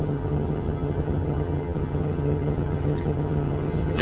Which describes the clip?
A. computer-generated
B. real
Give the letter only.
A